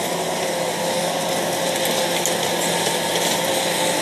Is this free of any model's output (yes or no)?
yes